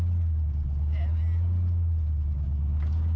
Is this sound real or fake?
real